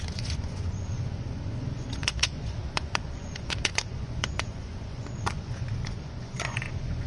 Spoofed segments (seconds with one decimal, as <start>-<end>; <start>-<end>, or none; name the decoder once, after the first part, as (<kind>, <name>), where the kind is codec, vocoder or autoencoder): 0.0-7.1 (vocoder, Vocos)